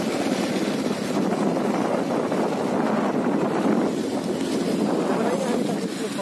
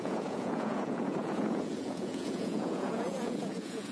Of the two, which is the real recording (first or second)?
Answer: first